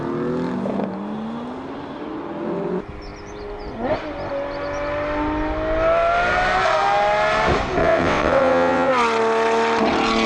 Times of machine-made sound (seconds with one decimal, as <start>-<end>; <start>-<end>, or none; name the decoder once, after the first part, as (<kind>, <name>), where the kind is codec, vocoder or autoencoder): 7.8-8.9 (vocoder, WaveNeXt)